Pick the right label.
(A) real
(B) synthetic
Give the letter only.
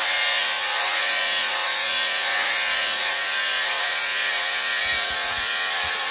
B